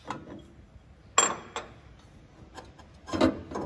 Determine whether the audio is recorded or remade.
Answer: recorded